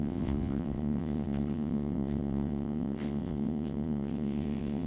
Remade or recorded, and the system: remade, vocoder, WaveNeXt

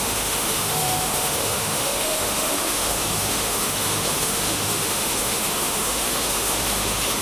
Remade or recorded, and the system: remade, autoencoder, DAC-VAE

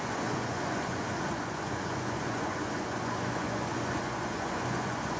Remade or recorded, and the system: remade, vocoder, Vocos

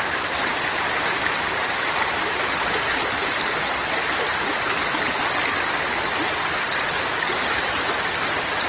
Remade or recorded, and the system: recorded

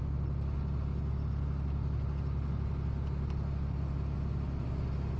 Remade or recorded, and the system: recorded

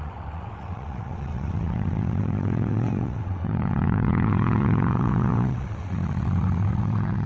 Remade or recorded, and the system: remade, vocoder, WaveNeXt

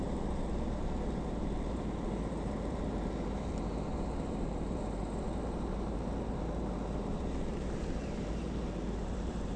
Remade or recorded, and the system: remade, vocoder, BigVGAN v2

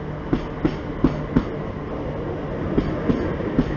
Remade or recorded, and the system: recorded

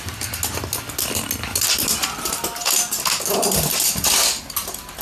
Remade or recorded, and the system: recorded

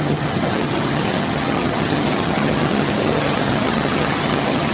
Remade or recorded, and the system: remade, vocoder, HiFi-GAN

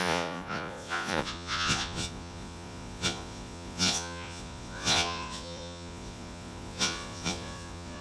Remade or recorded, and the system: remade, vocoder, Vocos